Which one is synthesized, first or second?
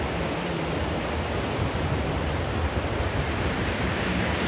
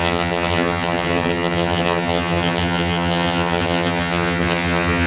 second